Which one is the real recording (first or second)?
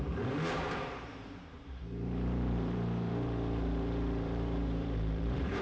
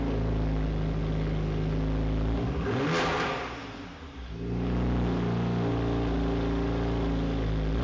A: second